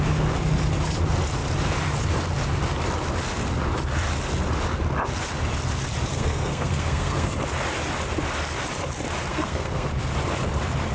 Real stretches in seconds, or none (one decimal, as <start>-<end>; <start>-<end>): 0.0-6.1; 7.3-9.3; 9.9-10.9